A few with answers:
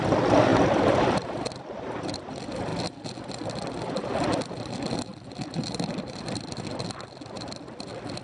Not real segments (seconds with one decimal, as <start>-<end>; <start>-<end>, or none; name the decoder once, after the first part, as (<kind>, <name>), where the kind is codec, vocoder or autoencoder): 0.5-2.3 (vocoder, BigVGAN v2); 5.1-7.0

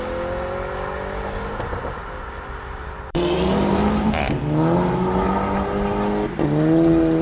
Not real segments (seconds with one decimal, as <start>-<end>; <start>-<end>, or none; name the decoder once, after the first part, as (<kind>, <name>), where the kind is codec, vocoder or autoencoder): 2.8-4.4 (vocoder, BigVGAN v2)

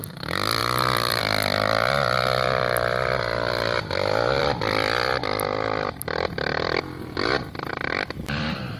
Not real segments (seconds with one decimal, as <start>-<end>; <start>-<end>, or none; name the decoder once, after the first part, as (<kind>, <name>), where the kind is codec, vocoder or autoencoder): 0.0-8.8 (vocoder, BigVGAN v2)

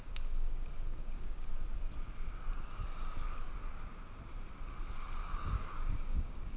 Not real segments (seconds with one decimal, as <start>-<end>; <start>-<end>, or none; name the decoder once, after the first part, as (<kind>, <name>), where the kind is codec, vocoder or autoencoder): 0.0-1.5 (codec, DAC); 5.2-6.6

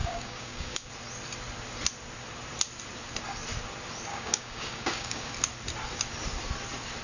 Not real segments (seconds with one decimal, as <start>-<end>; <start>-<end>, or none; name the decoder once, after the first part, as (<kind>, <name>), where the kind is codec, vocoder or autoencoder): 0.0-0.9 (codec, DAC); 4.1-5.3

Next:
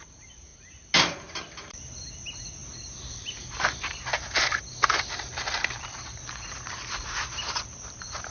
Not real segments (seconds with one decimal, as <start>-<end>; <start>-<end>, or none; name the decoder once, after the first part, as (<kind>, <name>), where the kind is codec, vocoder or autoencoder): 0.0-0.5 (vocoder, BigVGAN v2); 1.1-2.6; 3.1-8.3